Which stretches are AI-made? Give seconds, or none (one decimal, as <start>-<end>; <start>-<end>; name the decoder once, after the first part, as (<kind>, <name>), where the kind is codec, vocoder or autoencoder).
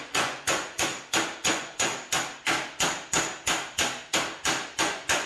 0.0-0.9 (vocoder, Vocos); 1.4-1.9; 4.8-5.3